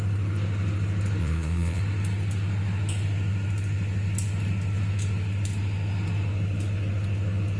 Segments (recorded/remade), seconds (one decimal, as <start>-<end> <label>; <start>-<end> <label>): 0.0-1.2 recorded; 1.2-1.8 remade; 1.8-7.6 recorded